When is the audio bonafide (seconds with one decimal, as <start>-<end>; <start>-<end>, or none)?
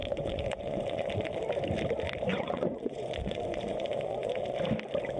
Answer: 1.3-2.3; 4.3-5.2